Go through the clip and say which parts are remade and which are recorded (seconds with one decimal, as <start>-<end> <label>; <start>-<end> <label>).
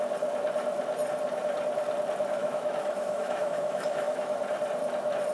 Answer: 0.0-2.4 recorded; 2.4-4.4 remade; 4.4-5.3 recorded